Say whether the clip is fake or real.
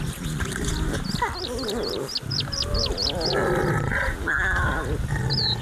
real